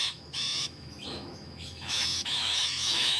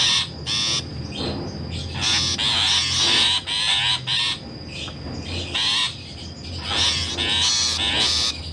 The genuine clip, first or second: second